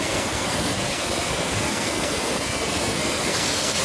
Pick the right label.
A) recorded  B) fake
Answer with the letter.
B